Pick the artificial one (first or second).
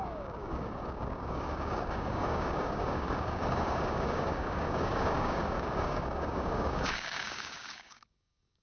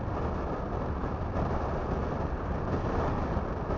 first